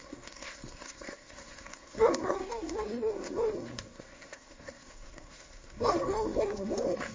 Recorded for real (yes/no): no